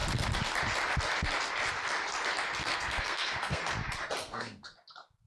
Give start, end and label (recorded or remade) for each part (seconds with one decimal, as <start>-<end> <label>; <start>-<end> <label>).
0.0-2.6 recorded; 2.6-3.6 remade; 3.6-4.2 recorded; 4.2-4.7 remade; 4.7-5.3 recorded